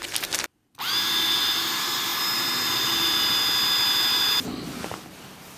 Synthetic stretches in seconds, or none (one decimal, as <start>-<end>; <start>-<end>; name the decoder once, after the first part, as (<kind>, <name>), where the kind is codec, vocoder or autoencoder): none